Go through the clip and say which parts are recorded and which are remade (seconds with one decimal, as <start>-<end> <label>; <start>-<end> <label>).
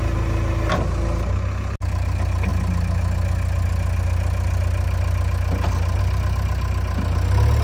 0.0-7.6 recorded